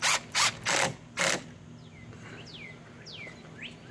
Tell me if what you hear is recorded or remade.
recorded